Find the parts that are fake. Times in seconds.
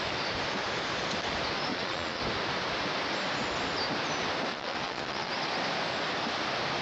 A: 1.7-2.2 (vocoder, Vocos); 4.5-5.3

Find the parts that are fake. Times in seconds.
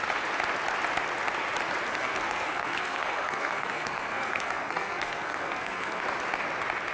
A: 1.9-6.0 (codec, SNAC)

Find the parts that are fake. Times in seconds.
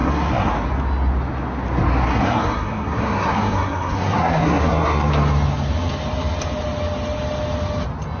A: 0.0-0.5 (codec, SNAC); 2.0-5.1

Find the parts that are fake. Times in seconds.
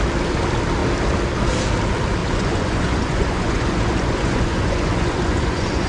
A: 2.2-5.9 (vocoder, Vocos)